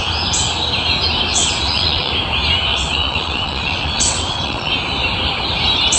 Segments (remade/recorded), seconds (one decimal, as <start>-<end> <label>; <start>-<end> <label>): 0.0-1.3 recorded; 1.3-2.1 remade; 2.1-2.7 recorded; 2.7-4.7 remade; 4.7-6.0 recorded